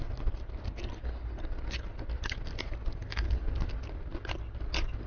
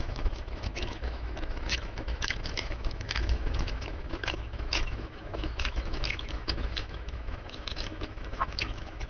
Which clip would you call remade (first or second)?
second